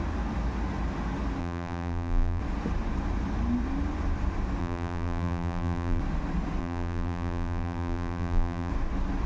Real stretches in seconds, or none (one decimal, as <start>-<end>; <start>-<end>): 0.0-1.4; 2.4-4.6; 6.0-6.6; 8.7-9.3